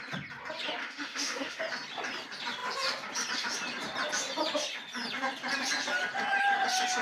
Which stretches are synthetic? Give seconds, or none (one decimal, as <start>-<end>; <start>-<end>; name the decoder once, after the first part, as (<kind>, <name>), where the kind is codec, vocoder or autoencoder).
0.8-1.6 (autoencoder, DAC-VAE)